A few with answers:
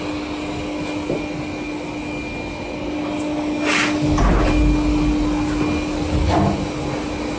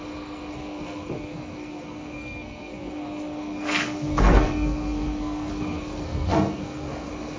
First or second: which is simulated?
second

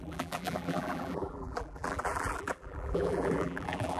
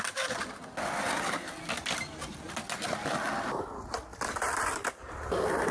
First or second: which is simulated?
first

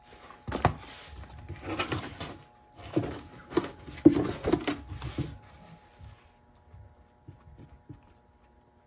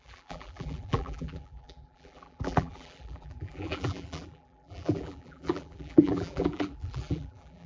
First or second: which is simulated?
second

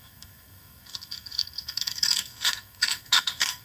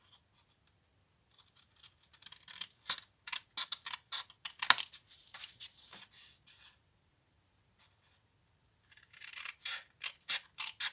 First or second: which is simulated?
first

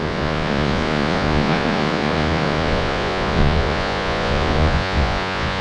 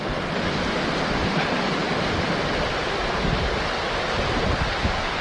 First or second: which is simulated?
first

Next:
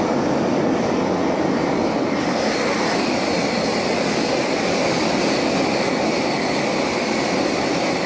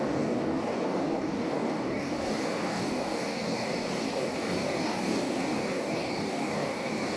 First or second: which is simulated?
second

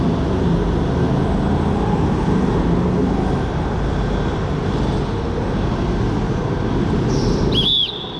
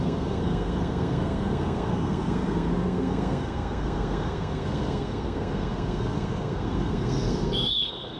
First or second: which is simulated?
second